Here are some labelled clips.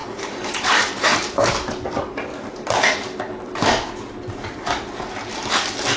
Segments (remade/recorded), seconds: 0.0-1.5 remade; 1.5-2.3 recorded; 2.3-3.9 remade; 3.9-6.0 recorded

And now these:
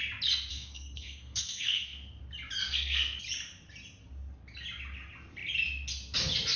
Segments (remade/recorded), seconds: 0.0-0.5 recorded; 0.5-2.2 remade; 2.2-2.6 recorded; 2.6-3.2 remade; 3.2-6.6 recorded

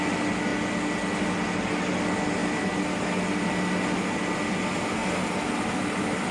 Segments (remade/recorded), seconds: 0.0-6.3 recorded